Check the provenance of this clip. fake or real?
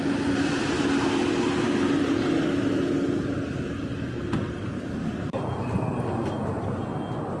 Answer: real